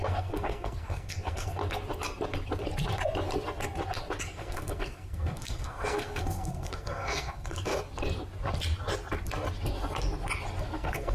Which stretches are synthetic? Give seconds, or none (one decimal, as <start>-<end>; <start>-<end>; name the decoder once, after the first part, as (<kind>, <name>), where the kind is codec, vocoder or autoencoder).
0.0-1.6 (codec, SNAC); 4.2-7.7; 10.6-11.1